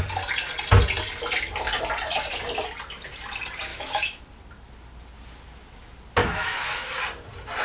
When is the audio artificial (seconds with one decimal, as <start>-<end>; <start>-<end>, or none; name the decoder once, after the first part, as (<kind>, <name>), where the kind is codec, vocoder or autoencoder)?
3.7-4.2 (autoencoder, DAC-VAE); 6.2-6.9